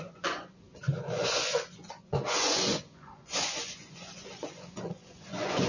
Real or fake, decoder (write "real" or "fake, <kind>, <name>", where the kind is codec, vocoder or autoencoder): fake, vocoder, Vocos